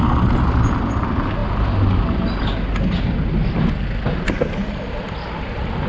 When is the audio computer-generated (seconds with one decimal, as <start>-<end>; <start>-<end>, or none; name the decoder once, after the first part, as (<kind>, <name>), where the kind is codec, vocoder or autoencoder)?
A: none